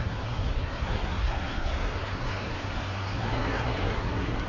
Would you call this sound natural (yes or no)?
no